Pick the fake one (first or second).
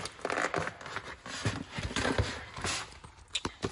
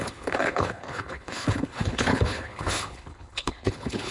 second